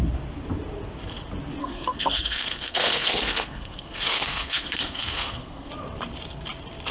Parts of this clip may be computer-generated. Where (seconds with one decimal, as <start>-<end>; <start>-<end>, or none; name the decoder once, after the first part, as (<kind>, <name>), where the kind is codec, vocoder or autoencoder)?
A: 1.6-5.7 (codec, SNAC)